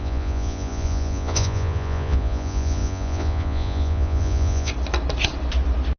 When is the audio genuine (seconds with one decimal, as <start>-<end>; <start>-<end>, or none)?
4.7-6.0